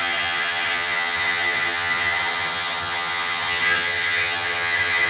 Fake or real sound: fake